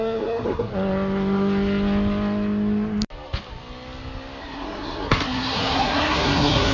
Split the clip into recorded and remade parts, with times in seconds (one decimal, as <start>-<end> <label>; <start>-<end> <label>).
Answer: 0.0-0.7 remade; 0.7-4.4 recorded; 4.4-6.7 remade